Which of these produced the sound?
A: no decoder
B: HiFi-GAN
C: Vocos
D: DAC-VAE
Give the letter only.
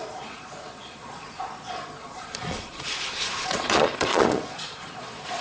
C